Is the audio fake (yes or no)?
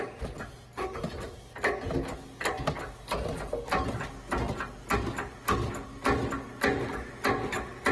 no